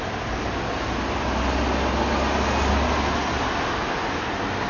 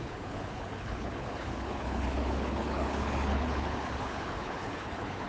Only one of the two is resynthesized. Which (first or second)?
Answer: second